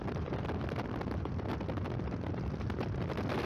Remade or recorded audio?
remade